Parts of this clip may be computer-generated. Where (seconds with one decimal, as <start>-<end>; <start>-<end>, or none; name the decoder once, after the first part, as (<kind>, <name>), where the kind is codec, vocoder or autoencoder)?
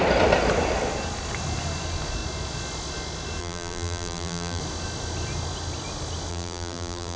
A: 3.4-4.6 (vocoder, BigVGAN v2); 6.3-7.2